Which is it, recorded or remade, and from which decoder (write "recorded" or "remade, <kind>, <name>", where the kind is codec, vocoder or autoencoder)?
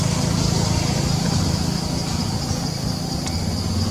recorded